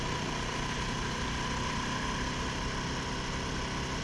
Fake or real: real